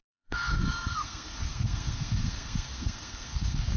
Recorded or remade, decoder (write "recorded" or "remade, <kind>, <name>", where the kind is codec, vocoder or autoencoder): remade, codec, SNAC